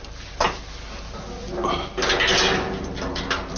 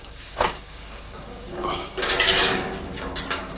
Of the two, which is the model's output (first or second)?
second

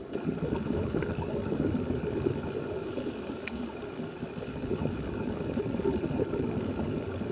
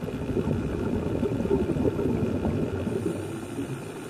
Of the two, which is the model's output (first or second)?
first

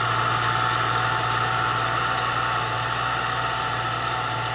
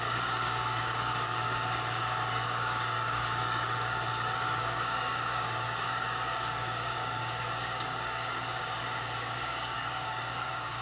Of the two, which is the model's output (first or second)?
second